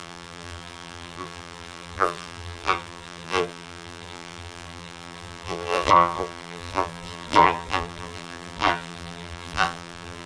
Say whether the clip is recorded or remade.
remade